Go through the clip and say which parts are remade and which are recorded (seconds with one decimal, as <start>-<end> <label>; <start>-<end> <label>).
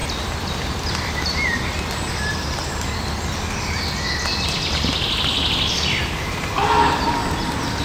0.0-1.2 recorded; 1.2-1.7 remade; 1.7-6.0 recorded; 6.0-7.2 remade; 7.2-7.8 recorded